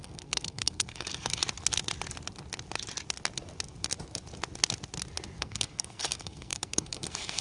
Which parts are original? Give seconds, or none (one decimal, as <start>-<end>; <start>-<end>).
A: 1.4-5.4